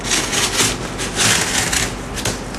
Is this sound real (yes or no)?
yes